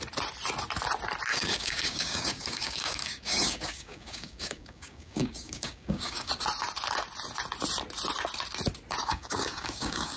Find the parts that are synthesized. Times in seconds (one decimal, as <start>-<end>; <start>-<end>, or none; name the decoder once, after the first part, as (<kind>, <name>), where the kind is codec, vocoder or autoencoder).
1.3-6.3 (codec, DAC); 9.0-10.2